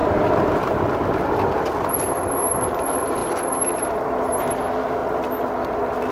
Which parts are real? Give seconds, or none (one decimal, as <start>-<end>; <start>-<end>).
0.0-6.1